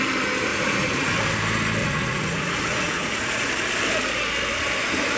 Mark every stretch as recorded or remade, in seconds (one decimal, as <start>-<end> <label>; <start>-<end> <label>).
0.0-0.5 recorded; 0.5-1.1 remade; 1.1-1.8 recorded; 1.8-3.5 remade; 3.5-5.2 recorded